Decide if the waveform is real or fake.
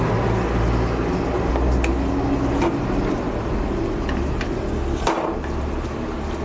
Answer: real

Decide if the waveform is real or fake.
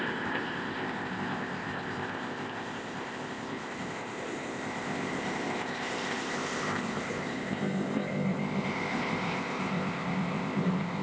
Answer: fake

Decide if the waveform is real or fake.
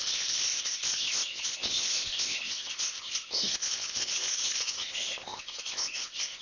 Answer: fake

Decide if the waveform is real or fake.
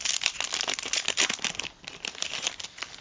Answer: real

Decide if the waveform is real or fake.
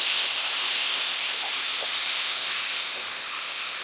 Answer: fake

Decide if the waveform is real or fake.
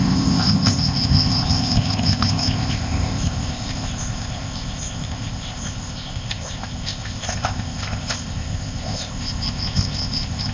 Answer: fake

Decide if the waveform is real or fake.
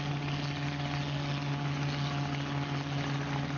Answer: real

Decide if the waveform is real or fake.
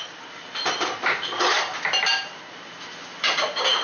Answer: real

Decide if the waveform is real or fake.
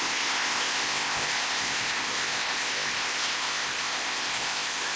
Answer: fake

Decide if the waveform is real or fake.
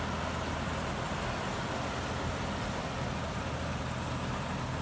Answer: real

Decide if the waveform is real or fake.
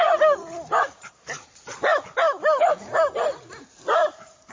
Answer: real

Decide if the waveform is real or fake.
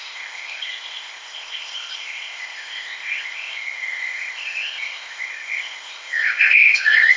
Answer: fake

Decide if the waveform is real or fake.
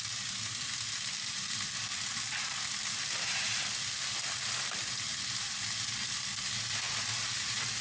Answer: real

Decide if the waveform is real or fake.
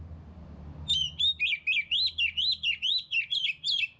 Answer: real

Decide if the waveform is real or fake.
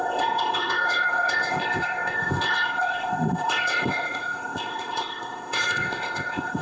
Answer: fake